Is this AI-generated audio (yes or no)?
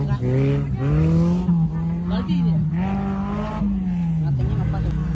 no